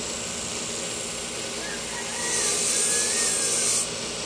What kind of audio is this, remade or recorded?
recorded